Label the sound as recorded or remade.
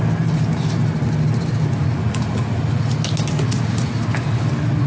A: recorded